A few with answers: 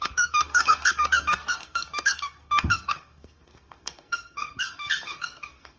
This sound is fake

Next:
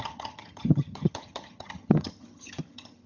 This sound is fake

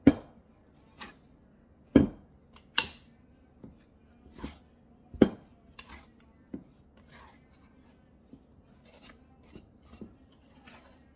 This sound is real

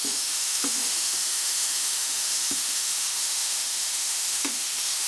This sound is fake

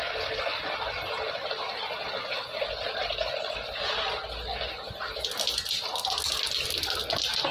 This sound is real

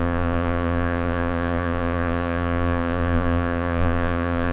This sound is fake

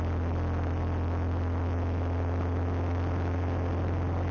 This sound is real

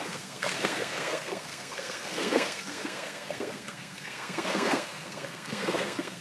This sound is fake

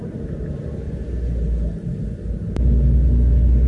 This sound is real